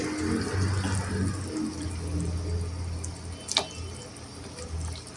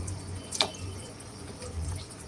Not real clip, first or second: second